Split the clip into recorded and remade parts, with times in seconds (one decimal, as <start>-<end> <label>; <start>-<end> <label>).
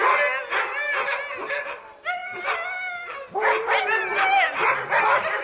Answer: 0.0-5.4 recorded